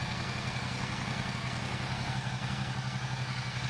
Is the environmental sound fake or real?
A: fake